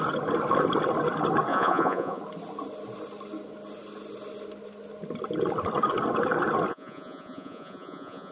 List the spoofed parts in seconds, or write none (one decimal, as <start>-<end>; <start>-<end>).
1.5-2.2; 6.7-8.3